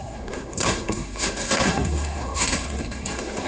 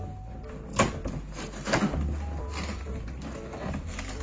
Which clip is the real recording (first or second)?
second